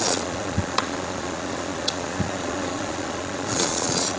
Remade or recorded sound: remade